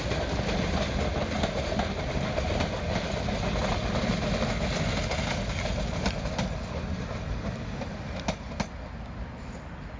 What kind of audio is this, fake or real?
real